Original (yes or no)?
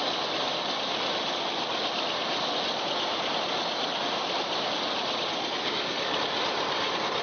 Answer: yes